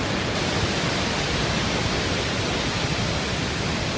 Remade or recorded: recorded